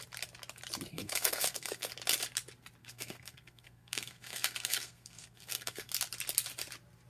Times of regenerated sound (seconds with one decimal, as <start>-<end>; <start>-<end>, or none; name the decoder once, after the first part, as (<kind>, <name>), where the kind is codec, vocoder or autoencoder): 0.9-1.9 (codec, SNAC); 2.8-5.9